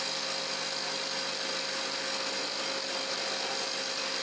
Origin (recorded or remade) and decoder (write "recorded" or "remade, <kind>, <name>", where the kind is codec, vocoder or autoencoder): recorded